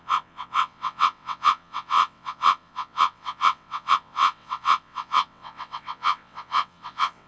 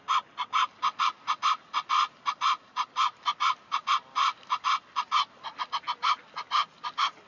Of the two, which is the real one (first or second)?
second